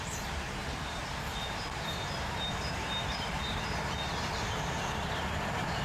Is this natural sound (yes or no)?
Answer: no